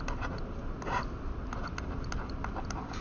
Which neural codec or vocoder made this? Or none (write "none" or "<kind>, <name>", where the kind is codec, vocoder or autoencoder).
none